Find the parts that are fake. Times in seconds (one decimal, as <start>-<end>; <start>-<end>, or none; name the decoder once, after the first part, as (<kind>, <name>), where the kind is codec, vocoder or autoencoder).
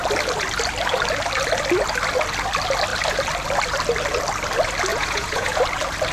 4.9-5.6 (vocoder, Vocos)